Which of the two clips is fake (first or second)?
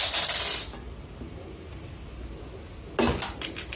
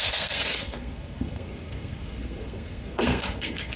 second